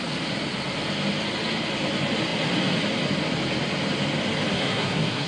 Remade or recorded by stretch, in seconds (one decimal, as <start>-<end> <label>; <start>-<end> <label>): 0.0-4.5 recorded; 4.5-5.3 remade